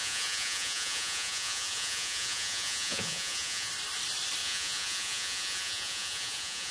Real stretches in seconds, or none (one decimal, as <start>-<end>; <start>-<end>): 3.7-4.4